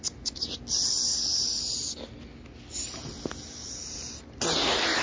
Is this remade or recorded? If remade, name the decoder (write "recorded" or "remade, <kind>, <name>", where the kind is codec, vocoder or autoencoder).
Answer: recorded